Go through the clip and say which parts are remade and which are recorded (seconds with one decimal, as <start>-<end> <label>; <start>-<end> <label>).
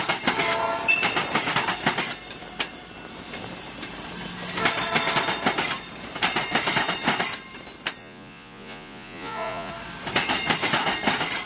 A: 0.0-8.0 recorded; 8.0-9.7 remade; 9.7-11.5 recorded